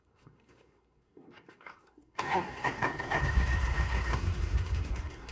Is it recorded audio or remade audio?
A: remade